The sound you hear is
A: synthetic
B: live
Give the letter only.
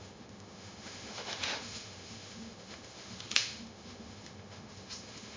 A